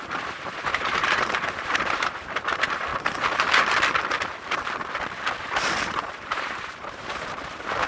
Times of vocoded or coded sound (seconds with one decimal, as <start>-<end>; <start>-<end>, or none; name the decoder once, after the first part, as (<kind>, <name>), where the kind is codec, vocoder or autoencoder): 0.0-2.9 (vocoder, BigVGAN v2); 5.8-7.9